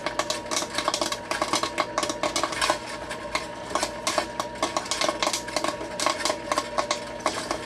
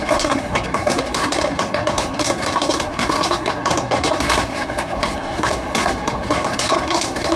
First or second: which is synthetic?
second